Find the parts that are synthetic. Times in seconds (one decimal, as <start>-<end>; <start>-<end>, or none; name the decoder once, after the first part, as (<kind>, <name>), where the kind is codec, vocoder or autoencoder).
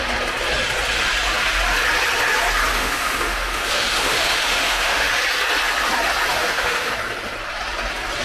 2.7-5.1 (autoencoder, DAC-VAE); 6.3-6.9